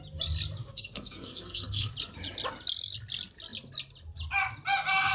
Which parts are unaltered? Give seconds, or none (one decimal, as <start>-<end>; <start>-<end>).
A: 0.0-0.7; 1.9-5.1